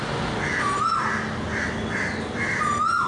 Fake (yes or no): no